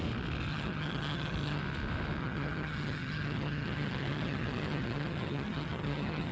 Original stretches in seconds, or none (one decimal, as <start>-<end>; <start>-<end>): 0.0-0.5; 1.6-2.2